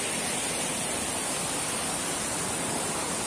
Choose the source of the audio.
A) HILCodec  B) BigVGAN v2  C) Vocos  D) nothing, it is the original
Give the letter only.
D